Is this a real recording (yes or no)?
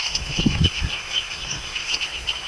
no